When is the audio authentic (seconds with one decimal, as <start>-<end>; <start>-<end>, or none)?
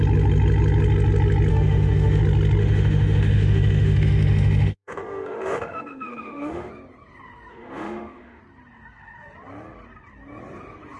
0.0-1.5; 2.2-2.6; 6.7-7.5; 8.4-11.0